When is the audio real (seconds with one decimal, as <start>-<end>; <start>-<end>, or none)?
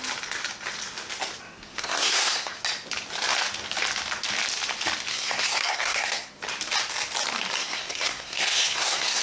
0.0-1.7; 2.6-5.1; 6.3-7.6